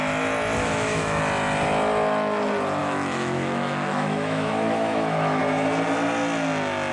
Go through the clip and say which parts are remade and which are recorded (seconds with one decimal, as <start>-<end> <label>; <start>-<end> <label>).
0.0-0.6 recorded; 0.6-1.2 remade; 1.2-2.8 recorded; 2.8-5.4 remade; 5.4-6.9 recorded